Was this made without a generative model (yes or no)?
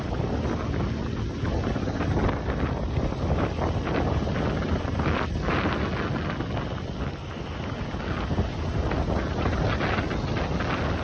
yes